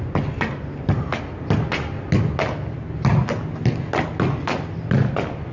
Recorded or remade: recorded